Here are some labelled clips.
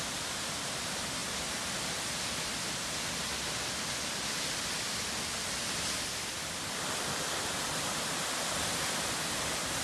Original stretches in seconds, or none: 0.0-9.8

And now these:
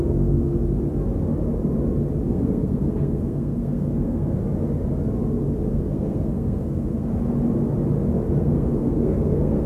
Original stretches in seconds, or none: 0.6-2.3; 4.4-5.7; 7.1-8.4

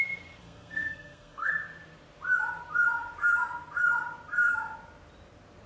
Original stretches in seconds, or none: 0.0-0.4; 1.5-5.7

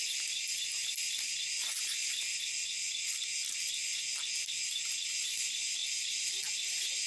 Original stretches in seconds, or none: 0.0-7.1

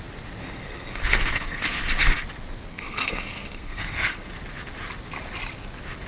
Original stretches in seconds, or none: 0.0-0.4; 1.8-2.7; 4.3-6.1

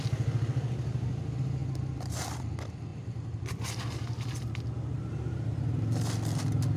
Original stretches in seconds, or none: 0.0-6.8

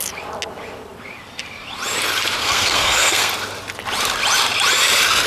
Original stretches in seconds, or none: 0.0-2.4; 3.3-5.3